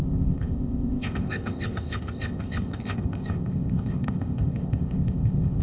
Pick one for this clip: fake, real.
fake